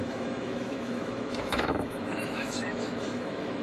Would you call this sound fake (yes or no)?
yes